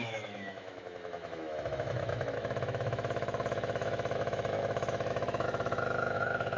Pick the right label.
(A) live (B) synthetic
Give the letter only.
B